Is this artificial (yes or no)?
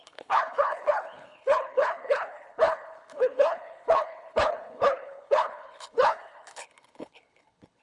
yes